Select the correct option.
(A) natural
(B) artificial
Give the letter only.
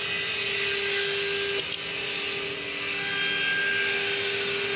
A